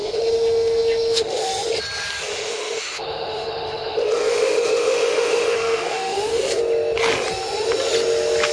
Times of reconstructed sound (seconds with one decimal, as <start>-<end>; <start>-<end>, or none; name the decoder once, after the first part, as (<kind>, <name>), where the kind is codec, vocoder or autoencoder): 0.0-1.5 (autoencoder, DAC-VAE); 2.3-6.6